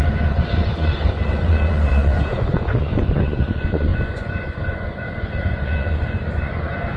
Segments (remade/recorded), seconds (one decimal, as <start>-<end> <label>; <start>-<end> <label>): 0.0-7.0 remade